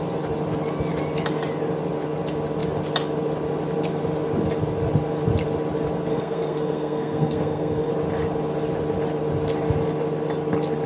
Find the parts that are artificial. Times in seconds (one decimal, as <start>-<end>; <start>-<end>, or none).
6.1-7.9